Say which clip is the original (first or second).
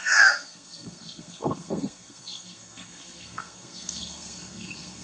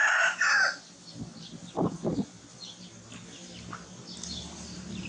second